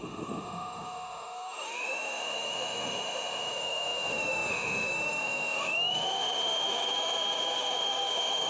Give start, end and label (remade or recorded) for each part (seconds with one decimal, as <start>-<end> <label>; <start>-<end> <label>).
0.0-8.5 remade